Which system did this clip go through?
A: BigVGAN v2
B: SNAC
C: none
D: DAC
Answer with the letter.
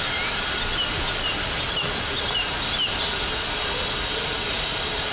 C